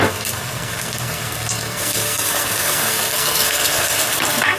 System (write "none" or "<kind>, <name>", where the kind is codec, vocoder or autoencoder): codec, SNAC